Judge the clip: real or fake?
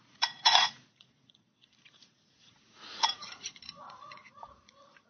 fake